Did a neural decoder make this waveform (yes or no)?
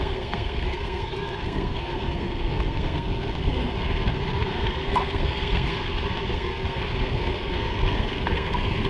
yes